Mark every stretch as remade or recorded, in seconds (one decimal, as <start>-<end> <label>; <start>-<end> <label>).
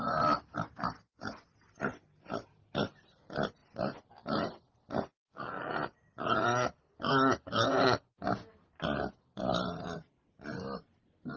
0.0-11.4 recorded